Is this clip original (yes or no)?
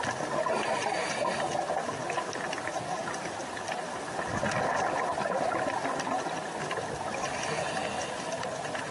yes